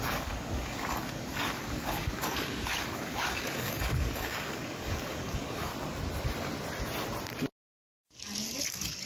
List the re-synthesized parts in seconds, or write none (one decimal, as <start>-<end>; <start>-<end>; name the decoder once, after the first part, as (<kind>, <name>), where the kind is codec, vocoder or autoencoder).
0.0-5.7 (codec, DAC); 8.6-9.1